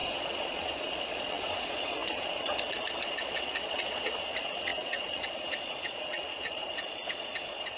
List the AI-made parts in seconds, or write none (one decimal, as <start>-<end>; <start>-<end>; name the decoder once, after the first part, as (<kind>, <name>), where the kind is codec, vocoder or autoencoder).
0.0-7.8 (vocoder, Vocos)

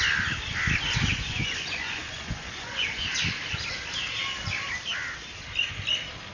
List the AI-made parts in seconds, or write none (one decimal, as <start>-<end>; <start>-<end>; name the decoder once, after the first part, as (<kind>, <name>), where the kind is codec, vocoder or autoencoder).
1.1-3.1 (vocoder, Vocos)

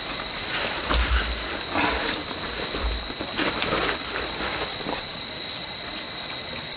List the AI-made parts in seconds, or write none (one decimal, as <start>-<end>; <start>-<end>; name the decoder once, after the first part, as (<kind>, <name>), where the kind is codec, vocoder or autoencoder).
none

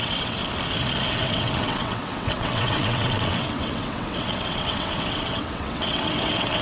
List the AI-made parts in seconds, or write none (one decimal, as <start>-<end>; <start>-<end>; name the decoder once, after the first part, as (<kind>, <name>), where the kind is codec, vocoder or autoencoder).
0.0-0.4 (vocoder, WaveNeXt); 1.1-6.6

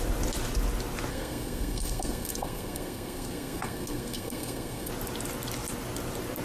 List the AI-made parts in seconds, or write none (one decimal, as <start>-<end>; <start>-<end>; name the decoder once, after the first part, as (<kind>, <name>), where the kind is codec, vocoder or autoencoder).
1.1-4.9 (codec, SNAC)

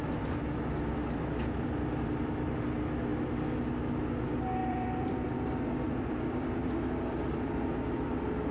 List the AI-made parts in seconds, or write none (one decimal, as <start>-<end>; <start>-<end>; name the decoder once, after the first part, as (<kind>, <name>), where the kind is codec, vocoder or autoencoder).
1.0-2.6 (vocoder, BigVGAN v2); 4.6-5.3